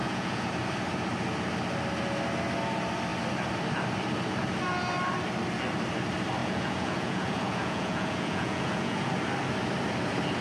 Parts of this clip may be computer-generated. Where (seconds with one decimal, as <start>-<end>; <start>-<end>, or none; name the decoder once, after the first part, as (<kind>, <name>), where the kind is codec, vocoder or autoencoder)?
0.0-0.5 (vocoder, Vocos); 6.4-9.1